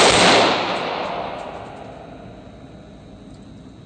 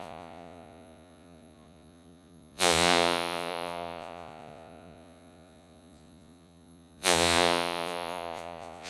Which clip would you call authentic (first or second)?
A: first